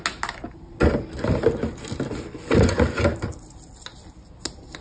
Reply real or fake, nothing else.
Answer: real